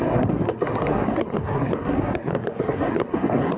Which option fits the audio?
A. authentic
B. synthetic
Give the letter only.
B